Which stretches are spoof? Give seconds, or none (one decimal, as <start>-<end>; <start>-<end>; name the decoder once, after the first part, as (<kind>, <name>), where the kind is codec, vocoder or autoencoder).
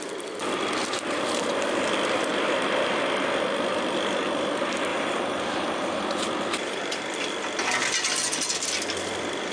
4.9-6.0 (vocoder, BigVGAN v2)